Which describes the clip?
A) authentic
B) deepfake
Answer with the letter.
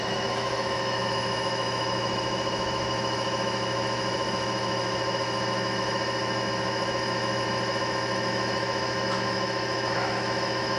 B